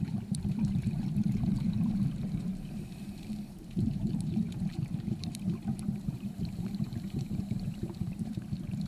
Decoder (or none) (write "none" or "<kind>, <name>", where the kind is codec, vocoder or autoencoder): vocoder, BigVGAN v2